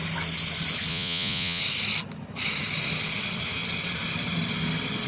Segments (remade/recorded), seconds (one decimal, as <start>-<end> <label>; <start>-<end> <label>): 0.0-0.9 recorded; 0.9-1.6 remade; 1.6-5.1 recorded